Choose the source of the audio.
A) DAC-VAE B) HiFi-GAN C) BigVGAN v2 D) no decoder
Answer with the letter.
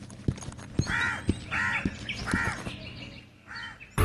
D